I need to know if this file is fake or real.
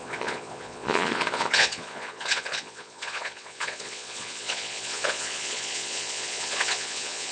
fake